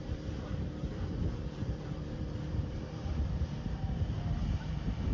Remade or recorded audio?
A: remade